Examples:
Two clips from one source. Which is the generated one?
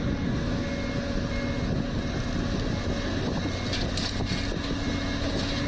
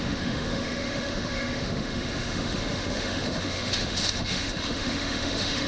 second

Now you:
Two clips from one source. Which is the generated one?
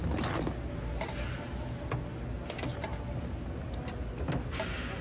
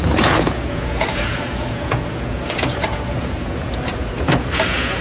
second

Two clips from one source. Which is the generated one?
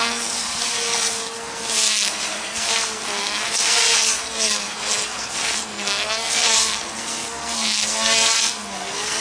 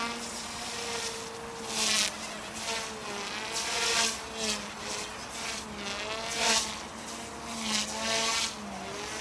first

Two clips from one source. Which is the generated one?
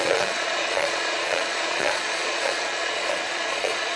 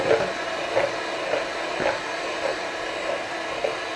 first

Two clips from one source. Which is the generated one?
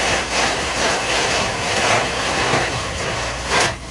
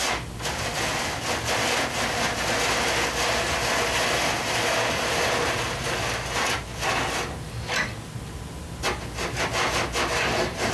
first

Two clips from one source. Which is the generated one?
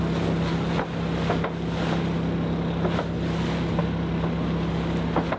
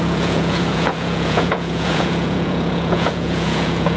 second